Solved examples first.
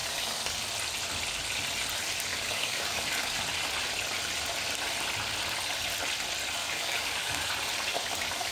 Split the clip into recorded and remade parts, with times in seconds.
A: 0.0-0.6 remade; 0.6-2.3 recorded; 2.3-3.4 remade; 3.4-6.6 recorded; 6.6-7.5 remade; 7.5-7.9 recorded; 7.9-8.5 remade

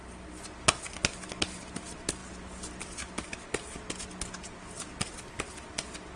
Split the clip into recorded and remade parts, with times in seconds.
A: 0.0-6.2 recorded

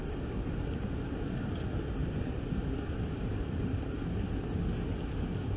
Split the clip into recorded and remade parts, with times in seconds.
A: 0.0-5.6 recorded

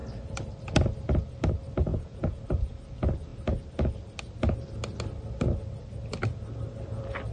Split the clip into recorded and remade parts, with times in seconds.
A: 0.0-1.9 recorded; 1.9-2.4 remade; 2.4-7.3 recorded

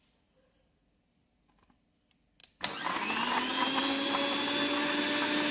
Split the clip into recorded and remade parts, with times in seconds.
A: 0.0-5.5 recorded

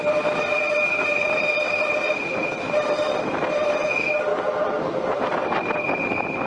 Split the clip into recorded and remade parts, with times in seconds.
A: 0.0-1.1 recorded; 1.1-3.8 remade; 3.8-4.3 recorded; 4.3-6.0 remade; 6.0-6.5 recorded

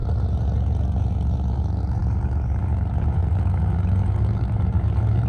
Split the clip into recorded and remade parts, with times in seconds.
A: 0.0-1.5 recorded; 1.5-5.3 remade

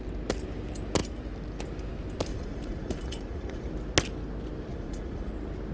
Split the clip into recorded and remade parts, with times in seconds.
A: 0.0-2.3 recorded; 2.3-3.7 remade; 3.7-4.7 recorded; 4.7-5.3 remade; 5.3-5.7 recorded